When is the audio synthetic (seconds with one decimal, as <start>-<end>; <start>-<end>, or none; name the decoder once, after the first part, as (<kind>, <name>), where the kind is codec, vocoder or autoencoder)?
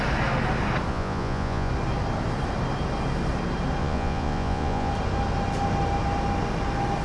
0.9-1.7 (vocoder, Vocos); 3.8-4.9